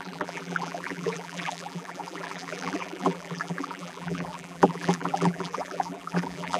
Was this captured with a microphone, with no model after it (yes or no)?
no